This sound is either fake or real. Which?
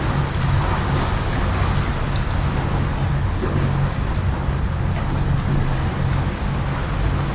real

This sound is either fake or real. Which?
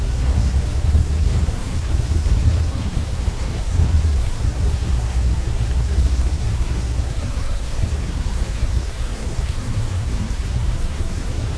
fake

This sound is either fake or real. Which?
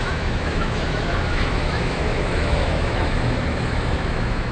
fake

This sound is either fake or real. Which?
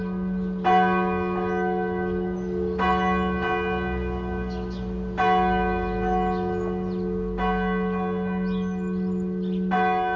real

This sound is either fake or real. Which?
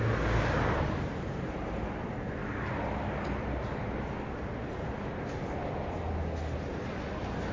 real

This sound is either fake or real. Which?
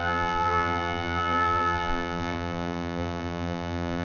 fake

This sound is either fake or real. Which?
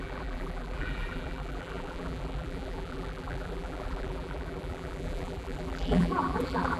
fake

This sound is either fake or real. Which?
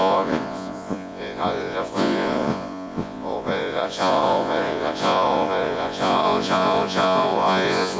fake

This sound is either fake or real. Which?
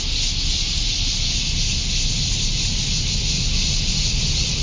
real